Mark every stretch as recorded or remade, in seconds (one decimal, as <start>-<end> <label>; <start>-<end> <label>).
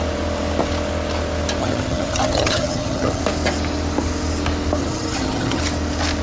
0.0-1.6 recorded; 1.6-3.2 remade; 3.2-4.8 recorded; 4.8-5.6 remade; 5.6-6.2 recorded